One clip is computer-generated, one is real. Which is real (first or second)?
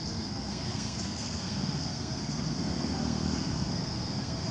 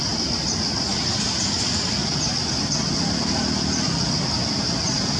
second